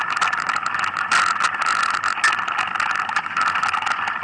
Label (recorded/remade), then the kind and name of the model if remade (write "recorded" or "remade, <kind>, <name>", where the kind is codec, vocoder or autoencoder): recorded